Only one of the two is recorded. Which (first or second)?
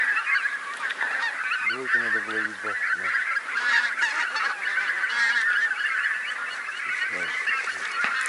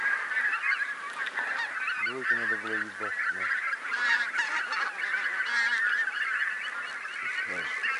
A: second